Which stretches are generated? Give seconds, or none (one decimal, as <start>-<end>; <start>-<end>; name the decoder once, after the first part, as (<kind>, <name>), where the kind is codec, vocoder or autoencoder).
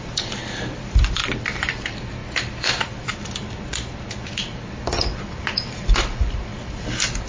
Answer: 0.0-7.3 (vocoder, BigVGAN v2)